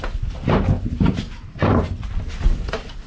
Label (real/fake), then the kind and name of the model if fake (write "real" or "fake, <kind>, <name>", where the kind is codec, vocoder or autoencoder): real